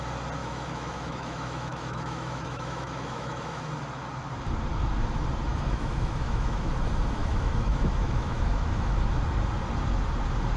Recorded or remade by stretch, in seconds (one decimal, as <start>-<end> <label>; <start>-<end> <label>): 0.0-0.4 recorded; 0.4-3.6 remade; 3.6-5.5 recorded; 5.5-6.7 remade; 6.7-7.2 recorded; 7.2-9.0 remade; 9.0-10.6 recorded